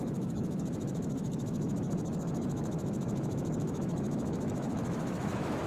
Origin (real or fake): fake